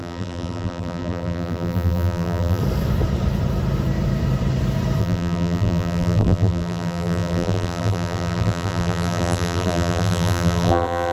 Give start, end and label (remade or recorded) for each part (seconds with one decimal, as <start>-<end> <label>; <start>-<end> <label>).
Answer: 0.0-2.6 remade; 2.6-5.0 recorded; 5.0-11.1 remade